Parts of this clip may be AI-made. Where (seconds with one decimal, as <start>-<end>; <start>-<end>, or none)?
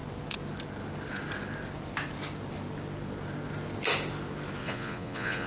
4.6-5.5